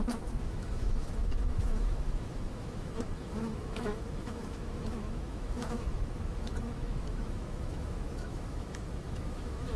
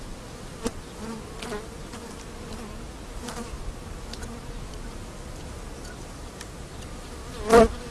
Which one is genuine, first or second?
second